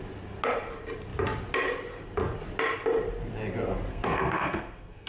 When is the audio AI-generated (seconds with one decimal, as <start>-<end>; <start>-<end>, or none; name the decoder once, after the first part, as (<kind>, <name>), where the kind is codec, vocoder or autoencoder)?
3.9-5.1 (codec, SNAC)